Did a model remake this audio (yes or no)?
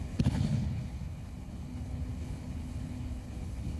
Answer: yes